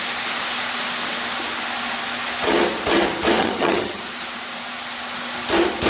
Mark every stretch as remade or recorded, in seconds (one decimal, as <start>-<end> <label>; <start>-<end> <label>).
0.0-3.4 recorded; 3.4-4.0 remade; 4.0-5.9 recorded